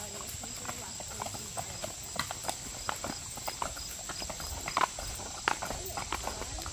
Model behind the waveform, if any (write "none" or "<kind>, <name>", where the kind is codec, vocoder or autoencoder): none